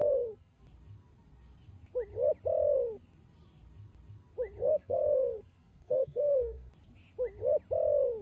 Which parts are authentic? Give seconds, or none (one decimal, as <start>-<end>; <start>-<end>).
0.6-4.6; 6.7-8.2